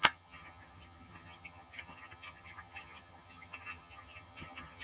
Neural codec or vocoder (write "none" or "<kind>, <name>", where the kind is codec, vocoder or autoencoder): vocoder, HiFi-GAN